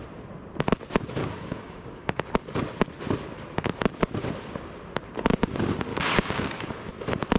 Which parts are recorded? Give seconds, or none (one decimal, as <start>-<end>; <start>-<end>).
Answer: 0.0-1.2; 2.3-5.9; 6.9-7.4